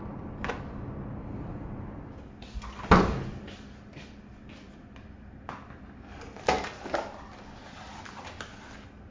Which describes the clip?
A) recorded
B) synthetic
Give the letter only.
A